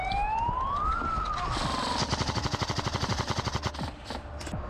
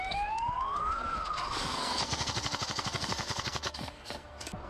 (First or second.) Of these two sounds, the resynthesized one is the second